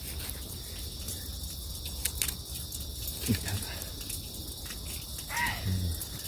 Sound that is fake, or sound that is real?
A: real